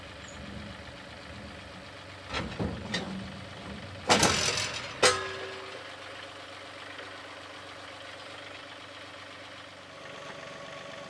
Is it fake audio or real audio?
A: real